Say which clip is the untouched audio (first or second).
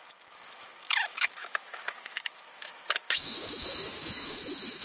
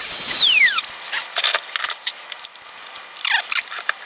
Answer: second